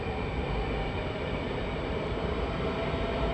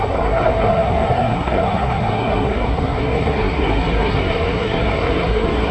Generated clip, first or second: second